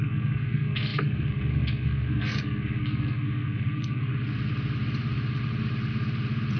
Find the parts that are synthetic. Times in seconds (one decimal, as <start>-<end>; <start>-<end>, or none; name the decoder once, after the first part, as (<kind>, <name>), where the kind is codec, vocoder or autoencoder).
0.0-4.1 (codec, SNAC)